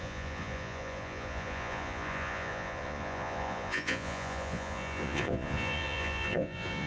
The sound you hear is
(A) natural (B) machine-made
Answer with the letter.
B